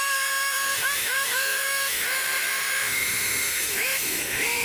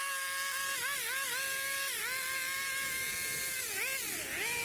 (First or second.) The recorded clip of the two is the second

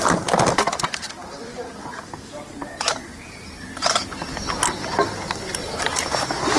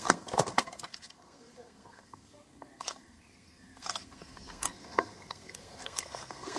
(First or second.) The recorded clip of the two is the first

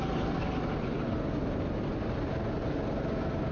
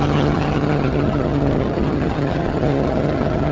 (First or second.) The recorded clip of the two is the first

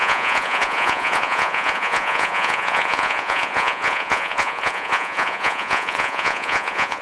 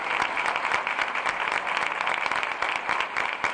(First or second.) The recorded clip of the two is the second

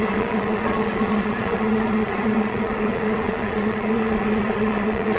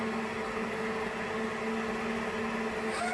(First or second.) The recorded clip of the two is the second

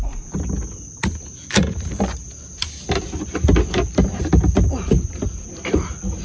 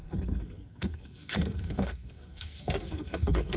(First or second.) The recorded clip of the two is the first